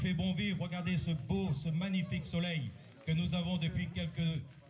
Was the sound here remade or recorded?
recorded